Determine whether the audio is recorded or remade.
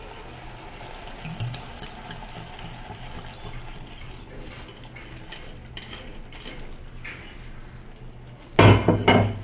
recorded